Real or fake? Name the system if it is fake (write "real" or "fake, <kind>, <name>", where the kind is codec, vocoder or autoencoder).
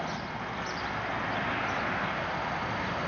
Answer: real